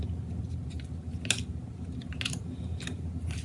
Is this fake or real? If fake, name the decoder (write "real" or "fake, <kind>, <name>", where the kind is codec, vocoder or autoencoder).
real